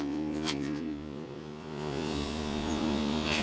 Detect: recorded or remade remade